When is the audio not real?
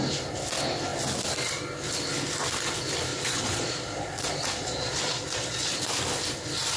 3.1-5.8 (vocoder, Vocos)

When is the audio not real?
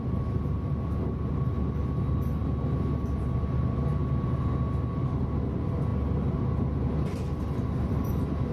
none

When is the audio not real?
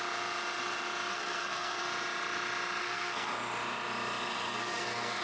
1.1-1.8 (codec, SNAC); 2.8-3.3; 4.3-5.2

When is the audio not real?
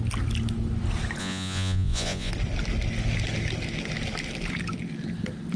1.2-2.3 (vocoder, Vocos)